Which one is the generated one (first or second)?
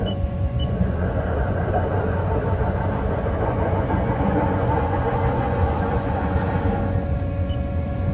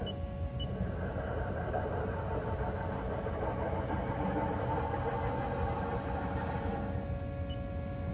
first